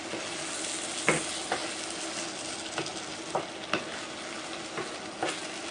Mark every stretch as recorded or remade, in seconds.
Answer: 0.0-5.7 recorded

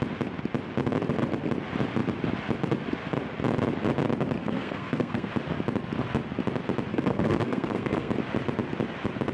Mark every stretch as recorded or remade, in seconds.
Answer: 0.0-4.4 recorded; 4.4-5.3 remade; 5.3-6.9 recorded; 6.9-8.1 remade; 8.1-9.3 recorded

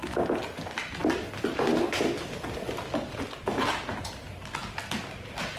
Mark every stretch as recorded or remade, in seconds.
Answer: 0.0-5.6 recorded

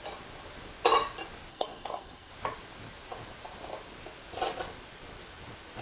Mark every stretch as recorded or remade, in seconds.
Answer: 0.0-1.5 recorded; 1.5-2.3 remade; 2.3-5.8 recorded

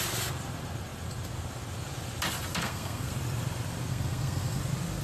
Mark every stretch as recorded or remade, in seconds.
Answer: 0.0-2.5 recorded; 2.5-3.1 remade; 3.1-3.9 recorded; 3.9-4.6 remade; 4.6-5.0 recorded

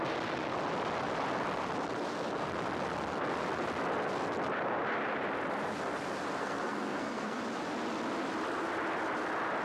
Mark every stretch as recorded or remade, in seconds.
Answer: 0.0-6.4 recorded; 6.4-7.4 remade; 7.4-9.6 recorded

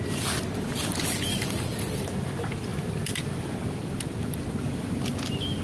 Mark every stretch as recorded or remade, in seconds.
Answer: 0.0-5.6 recorded

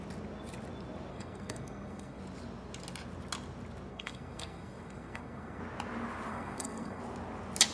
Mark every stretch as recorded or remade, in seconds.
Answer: 0.0-1.1 recorded; 1.1-2.2 remade; 2.2-3.9 recorded; 3.9-5.6 remade; 5.6-6.3 recorded; 6.3-7.0 remade; 7.0-7.7 recorded